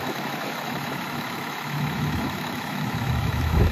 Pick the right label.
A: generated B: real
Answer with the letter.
A